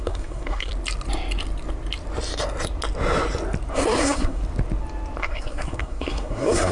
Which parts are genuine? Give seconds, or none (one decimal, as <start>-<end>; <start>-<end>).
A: 0.7-3.7; 4.4-5.2